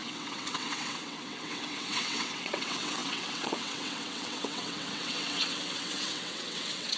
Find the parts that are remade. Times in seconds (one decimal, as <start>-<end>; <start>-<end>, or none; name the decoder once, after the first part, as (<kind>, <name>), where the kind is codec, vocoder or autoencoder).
0.0-7.0 (vocoder, WaveNeXt)